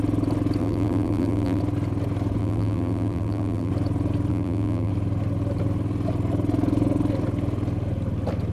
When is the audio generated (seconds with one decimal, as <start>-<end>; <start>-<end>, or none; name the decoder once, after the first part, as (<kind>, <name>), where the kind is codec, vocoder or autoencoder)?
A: 0.6-1.6 (vocoder, BigVGAN v2); 2.4-3.7; 4.3-4.9